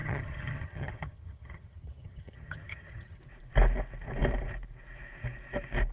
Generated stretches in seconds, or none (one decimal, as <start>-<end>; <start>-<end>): 0.0-3.2